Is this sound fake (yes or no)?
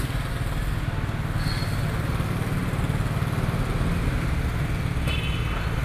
no